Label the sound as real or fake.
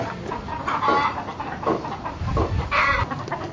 real